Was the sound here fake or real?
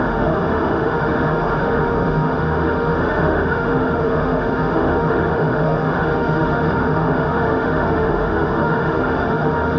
fake